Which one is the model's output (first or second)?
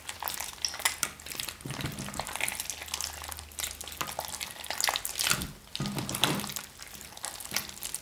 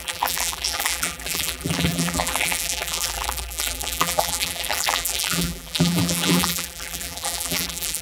second